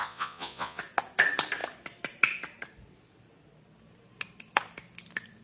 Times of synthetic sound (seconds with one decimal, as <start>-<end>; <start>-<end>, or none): 0.0-0.8